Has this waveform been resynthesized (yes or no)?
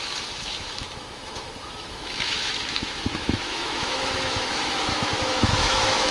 yes